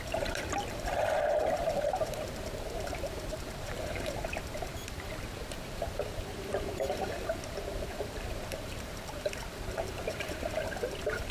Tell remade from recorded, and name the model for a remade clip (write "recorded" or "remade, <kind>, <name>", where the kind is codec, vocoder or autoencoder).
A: remade, vocoder, BigVGAN v2